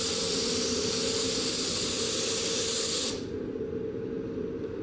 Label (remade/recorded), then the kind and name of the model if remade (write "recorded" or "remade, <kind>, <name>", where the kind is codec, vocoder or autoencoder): recorded